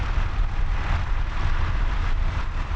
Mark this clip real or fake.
real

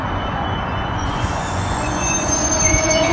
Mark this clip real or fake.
fake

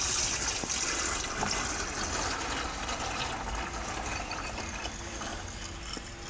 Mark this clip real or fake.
real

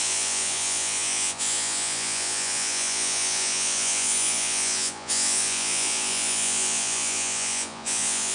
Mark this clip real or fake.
fake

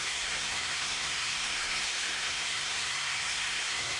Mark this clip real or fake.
fake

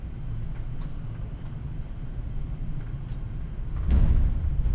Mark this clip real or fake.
real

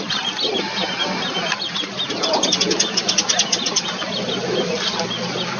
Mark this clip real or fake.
real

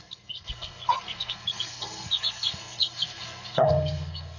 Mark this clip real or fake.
fake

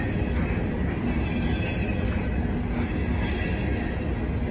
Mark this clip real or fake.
real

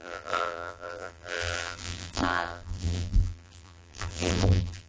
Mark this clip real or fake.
fake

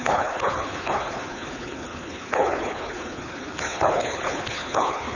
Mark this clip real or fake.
fake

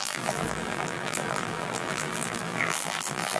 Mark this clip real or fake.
fake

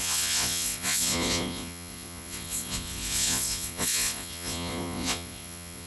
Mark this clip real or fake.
fake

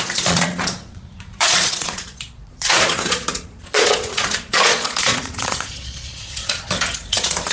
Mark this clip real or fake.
fake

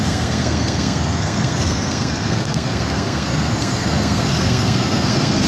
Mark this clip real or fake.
fake